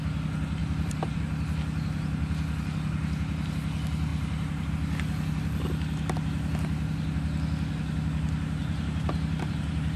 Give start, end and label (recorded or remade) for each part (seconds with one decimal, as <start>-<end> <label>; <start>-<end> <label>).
0.0-0.6 recorded; 0.6-1.2 remade; 1.2-4.1 recorded; 4.1-4.7 remade; 4.7-8.6 recorded; 8.6-10.0 remade